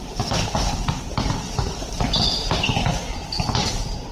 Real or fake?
fake